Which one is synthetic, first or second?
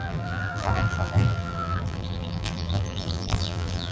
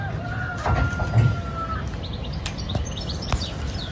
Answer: first